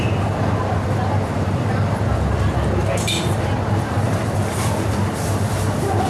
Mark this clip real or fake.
fake